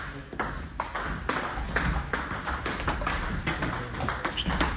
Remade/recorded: recorded